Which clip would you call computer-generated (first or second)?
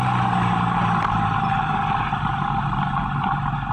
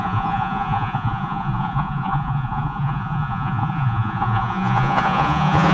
second